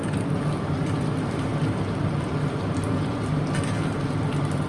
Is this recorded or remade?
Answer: recorded